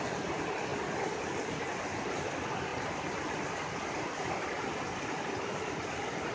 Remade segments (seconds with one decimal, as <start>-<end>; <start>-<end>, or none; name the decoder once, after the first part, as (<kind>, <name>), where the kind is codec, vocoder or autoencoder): none